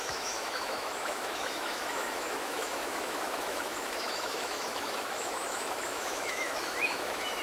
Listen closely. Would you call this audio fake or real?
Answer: fake